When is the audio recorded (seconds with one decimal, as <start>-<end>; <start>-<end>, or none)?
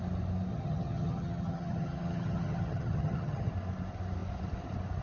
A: 0.0-0.5; 3.5-5.0